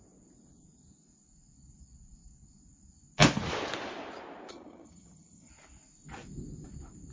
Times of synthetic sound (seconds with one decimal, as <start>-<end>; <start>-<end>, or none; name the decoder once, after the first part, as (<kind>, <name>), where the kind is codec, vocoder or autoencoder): 4.5-5.5 (vocoder, HiFi-GAN)